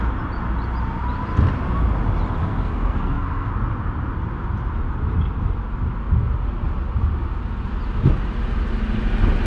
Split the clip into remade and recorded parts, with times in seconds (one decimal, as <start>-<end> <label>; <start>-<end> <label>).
0.0-2.4 recorded; 2.4-3.5 remade; 3.5-9.5 recorded